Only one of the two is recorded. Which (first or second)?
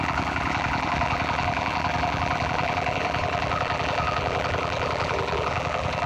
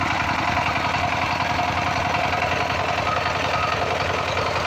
second